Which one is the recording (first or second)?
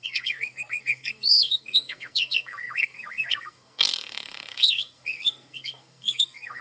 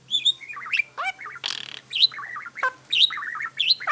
second